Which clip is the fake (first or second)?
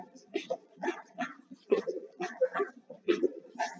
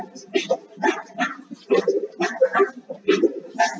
first